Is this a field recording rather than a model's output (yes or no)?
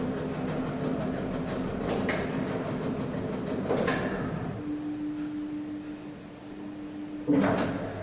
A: yes